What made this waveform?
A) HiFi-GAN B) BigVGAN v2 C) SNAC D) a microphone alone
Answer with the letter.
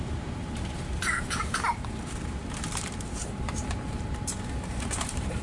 B